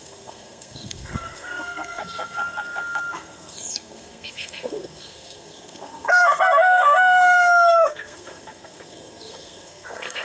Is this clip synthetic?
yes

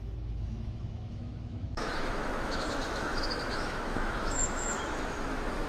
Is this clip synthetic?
yes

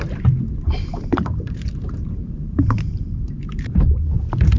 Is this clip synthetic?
yes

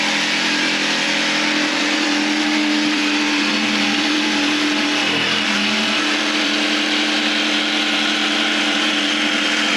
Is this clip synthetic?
yes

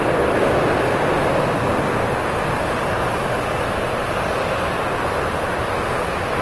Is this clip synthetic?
no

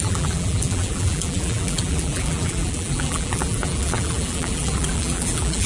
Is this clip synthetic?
yes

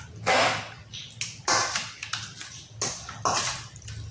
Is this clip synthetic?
no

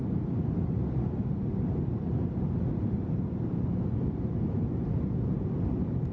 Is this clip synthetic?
no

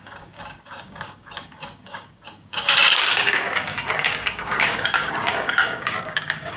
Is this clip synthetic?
yes